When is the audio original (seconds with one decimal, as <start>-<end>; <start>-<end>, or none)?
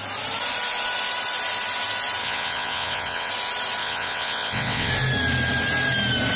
0.0-2.2; 3.3-3.8; 4.9-6.4